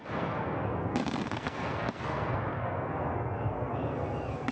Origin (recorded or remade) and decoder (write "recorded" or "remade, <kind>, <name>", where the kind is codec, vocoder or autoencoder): remade, codec, SNAC